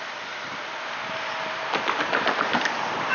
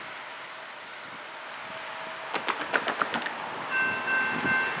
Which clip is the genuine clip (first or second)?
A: second